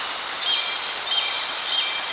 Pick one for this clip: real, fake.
real